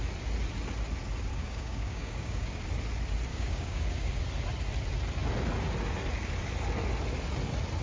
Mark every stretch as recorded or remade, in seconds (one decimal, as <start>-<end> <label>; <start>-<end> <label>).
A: 0.0-1.3 recorded; 1.3-2.6 remade; 2.6-3.3 recorded; 3.3-4.2 remade; 4.2-7.8 recorded